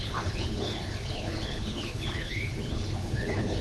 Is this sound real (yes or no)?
no